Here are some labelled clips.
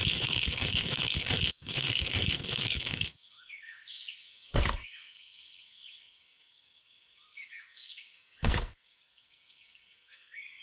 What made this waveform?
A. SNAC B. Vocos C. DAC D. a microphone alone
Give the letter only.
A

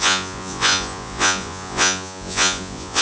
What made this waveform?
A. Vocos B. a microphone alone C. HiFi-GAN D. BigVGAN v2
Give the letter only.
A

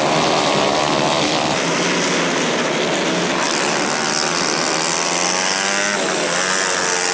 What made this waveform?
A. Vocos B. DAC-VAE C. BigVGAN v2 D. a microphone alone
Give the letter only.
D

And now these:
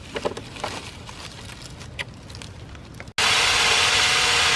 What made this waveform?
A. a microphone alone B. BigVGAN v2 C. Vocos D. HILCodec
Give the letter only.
A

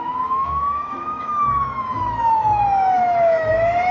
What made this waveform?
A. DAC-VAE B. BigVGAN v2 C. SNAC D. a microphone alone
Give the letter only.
A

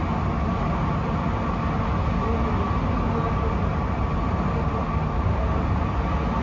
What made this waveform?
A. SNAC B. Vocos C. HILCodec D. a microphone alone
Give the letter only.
D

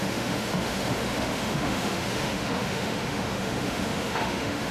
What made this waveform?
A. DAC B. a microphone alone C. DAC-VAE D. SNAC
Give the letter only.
C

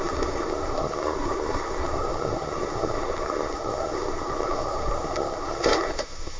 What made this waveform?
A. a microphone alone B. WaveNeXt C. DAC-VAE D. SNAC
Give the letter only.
D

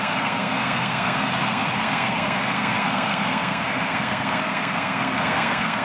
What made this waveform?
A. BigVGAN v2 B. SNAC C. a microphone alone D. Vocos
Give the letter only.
B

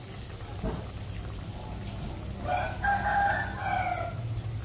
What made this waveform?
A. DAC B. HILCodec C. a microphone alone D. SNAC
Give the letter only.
C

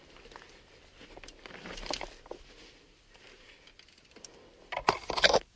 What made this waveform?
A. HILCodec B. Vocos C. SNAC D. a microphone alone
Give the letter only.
D